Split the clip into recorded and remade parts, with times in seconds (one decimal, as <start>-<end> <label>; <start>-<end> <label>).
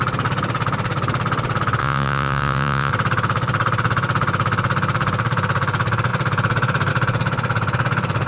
0.0-1.8 recorded; 1.8-2.9 remade; 2.9-8.3 recorded